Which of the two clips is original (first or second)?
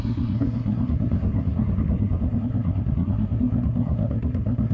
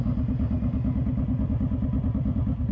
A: second